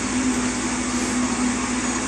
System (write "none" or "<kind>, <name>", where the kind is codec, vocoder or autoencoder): none